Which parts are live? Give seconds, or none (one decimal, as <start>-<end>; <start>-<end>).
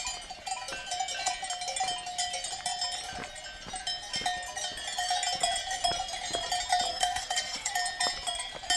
0.0-6.9; 7.7-8.8